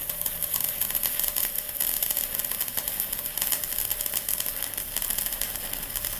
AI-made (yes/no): no